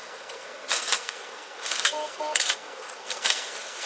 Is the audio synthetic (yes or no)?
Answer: yes